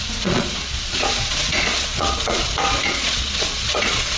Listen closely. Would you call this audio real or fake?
fake